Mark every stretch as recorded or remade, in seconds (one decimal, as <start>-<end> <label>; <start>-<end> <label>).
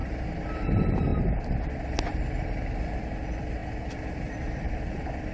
0.0-5.3 recorded